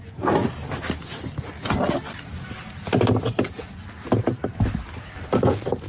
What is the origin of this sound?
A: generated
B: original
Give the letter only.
B